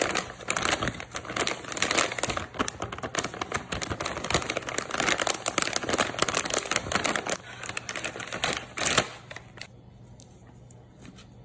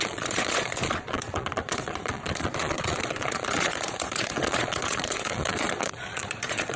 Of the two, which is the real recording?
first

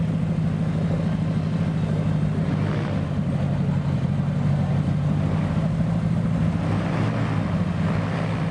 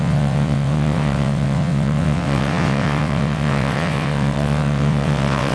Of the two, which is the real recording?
first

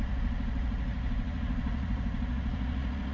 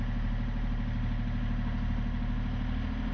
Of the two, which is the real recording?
second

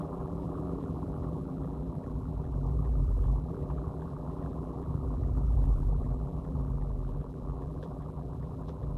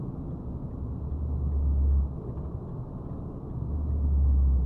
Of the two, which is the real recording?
second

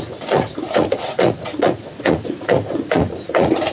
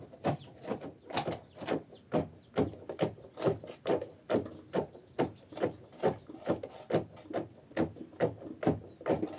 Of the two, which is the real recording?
second